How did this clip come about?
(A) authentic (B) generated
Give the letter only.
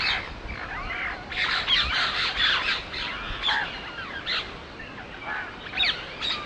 A